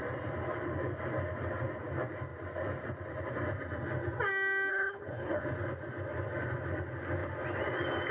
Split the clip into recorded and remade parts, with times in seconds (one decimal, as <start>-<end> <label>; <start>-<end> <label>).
0.0-4.7 recorded; 4.7-5.4 remade; 5.4-8.1 recorded